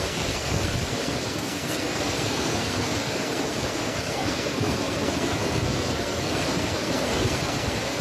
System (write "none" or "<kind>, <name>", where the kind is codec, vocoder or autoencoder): codec, SNAC